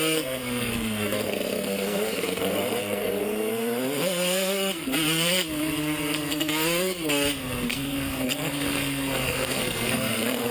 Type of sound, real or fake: fake